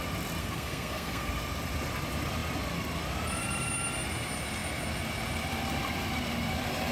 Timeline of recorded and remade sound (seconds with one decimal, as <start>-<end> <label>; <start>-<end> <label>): 0.0-0.4 recorded; 0.4-1.3 remade; 1.3-6.9 recorded